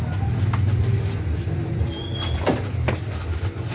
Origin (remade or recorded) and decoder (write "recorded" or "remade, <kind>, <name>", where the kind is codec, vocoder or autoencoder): recorded